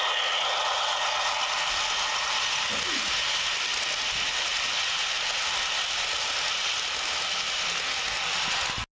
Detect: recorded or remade recorded